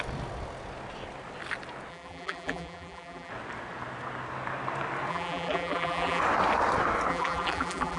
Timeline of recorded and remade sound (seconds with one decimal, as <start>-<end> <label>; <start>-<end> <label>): 0.0-1.9 recorded; 1.9-3.3 remade; 3.3-5.1 recorded; 5.1-6.2 remade; 6.2-7.1 recorded; 7.1-8.0 remade